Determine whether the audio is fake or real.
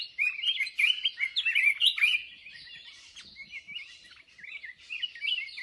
real